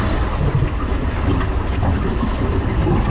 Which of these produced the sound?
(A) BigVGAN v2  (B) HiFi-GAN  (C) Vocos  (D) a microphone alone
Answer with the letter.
D